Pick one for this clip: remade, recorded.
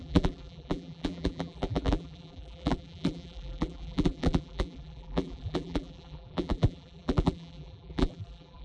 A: remade